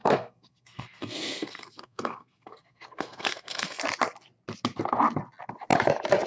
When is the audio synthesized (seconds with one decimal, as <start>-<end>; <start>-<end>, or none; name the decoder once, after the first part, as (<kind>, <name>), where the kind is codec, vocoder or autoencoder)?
0.0-3.8 (codec, SNAC)